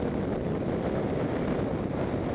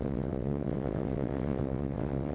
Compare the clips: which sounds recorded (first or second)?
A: first